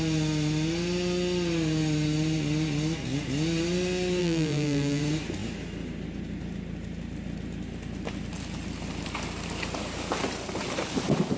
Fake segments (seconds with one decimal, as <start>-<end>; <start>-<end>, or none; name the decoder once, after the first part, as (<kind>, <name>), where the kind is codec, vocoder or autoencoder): 4.2-5.0 (vocoder, BigVGAN v2)